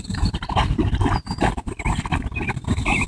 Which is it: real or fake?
fake